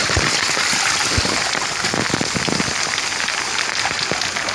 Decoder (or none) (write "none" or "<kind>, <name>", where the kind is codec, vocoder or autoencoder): none